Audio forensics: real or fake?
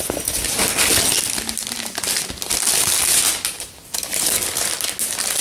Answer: real